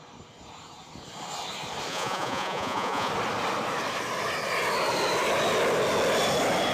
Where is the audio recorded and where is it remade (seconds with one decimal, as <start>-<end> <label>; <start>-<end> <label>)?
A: 0.0-1.9 recorded; 1.9-3.1 remade; 3.1-6.7 recorded